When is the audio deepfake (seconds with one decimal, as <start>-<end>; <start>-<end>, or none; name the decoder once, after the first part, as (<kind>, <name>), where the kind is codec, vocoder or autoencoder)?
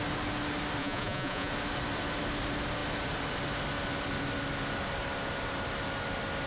0.8-1.5 (vocoder, Vocos)